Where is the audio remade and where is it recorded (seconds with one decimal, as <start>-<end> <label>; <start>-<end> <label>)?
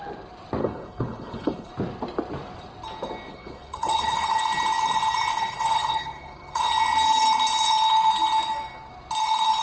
0.0-0.6 recorded; 0.6-1.7 remade; 1.7-3.3 recorded; 3.3-4.4 remade; 4.4-5.3 recorded; 5.3-6.7 remade; 6.7-9.6 recorded